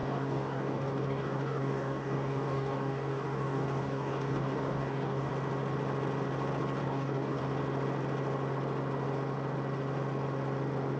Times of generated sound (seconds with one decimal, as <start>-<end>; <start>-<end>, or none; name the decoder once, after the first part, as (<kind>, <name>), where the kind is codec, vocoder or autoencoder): 0.0-5.3 (codec, DAC); 6.8-7.4